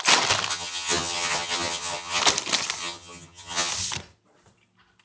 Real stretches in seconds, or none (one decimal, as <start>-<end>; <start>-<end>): 0.0-0.5; 2.2-2.8; 3.7-5.0